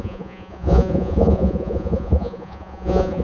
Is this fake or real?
fake